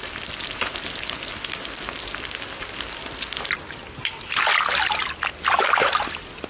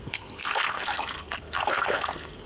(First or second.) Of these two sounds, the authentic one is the first